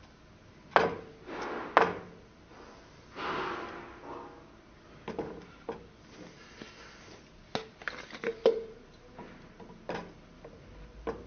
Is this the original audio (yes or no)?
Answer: yes